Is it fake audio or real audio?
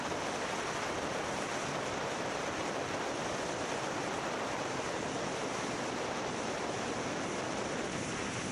real